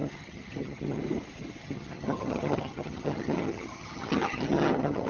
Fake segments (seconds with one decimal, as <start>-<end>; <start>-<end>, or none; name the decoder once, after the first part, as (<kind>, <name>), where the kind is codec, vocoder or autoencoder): 0.0-1.0 (vocoder, HiFi-GAN); 1.6-5.1